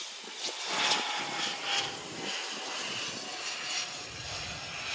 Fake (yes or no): no